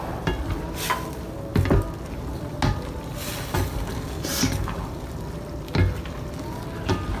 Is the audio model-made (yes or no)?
no